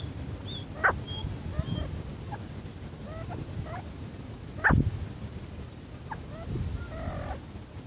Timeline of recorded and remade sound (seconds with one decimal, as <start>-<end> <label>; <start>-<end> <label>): 0.0-7.9 recorded